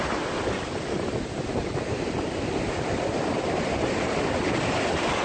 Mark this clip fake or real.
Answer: real